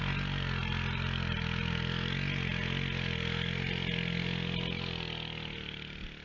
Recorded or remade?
recorded